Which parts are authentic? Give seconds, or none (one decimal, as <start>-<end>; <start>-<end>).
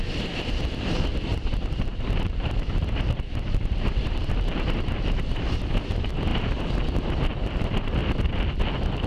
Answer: 0.0-1.1; 5.7-9.1